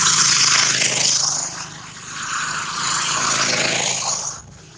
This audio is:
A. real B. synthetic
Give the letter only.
A